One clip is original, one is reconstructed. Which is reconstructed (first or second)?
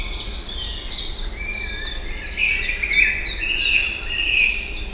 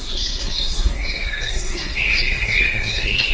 second